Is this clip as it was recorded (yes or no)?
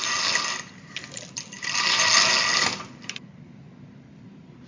yes